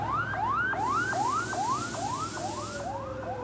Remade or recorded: recorded